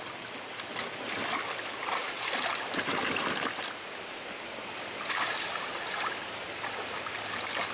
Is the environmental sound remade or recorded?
recorded